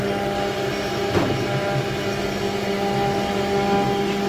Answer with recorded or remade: recorded